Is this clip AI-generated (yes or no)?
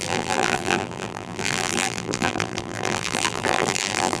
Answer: yes